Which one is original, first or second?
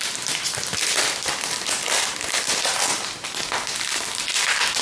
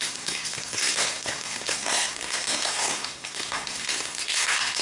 first